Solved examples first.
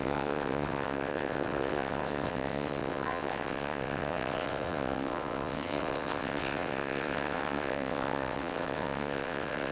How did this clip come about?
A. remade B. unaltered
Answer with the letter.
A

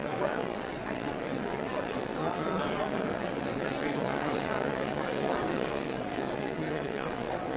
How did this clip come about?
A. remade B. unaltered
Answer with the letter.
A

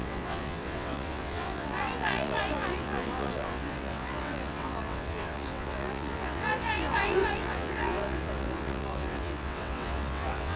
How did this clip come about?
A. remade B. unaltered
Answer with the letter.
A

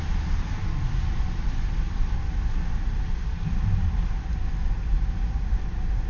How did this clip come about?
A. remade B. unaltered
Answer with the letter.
B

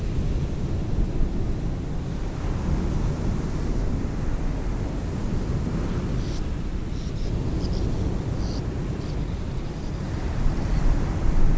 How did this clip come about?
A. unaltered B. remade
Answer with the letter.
A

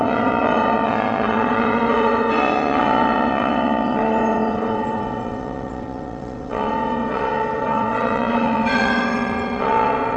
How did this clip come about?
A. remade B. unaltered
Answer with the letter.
A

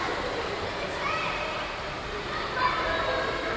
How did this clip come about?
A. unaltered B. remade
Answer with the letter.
A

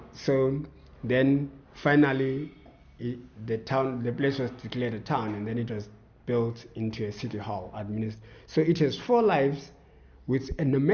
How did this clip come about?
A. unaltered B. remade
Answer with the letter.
A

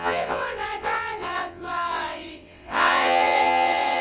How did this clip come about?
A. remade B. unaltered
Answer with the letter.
A